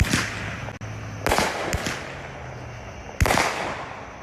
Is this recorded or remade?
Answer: recorded